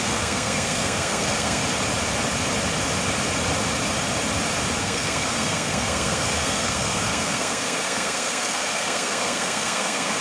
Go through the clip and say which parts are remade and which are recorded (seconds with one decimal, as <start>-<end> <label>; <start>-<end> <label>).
0.0-1.6 remade; 1.6-4.8 recorded; 4.8-10.2 remade